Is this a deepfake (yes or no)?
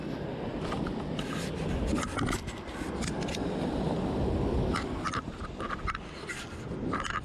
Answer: no